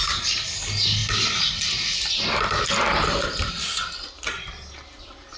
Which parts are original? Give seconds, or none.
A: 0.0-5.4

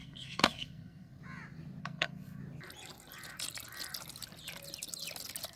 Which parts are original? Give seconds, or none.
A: 1.2-1.8; 2.4-5.6

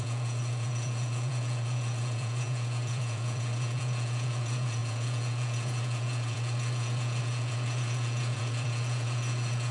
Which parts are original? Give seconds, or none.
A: none

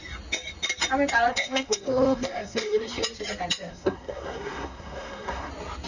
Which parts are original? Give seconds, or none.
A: 0.0-1.3; 3.0-3.7; 5.5-5.9

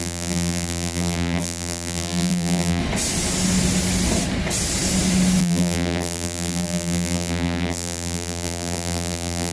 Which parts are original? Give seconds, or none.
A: 2.8-5.4

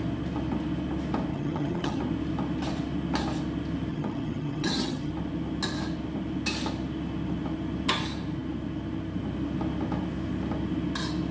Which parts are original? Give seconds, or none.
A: 0.0-1.3; 2.0-3.9; 5.1-11.3

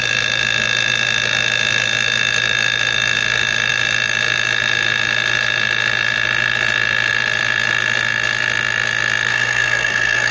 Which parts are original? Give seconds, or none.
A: 0.0-9.3